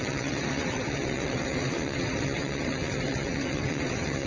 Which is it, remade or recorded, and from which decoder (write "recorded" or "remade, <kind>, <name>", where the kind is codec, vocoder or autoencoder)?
remade, vocoder, WaveNeXt